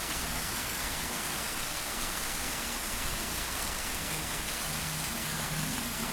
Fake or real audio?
fake